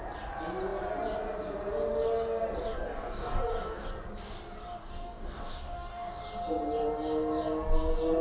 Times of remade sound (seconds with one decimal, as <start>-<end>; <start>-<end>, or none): 2.6-3.9; 4.8-6.2